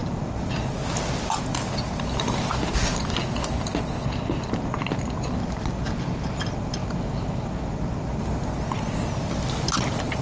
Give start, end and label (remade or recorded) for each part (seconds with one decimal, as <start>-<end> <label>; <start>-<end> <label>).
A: 0.0-10.2 recorded